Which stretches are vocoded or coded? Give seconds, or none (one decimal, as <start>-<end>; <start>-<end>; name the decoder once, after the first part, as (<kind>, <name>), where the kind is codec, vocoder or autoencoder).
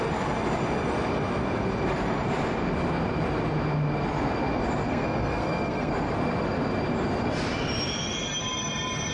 4.9-5.9 (codec, SNAC)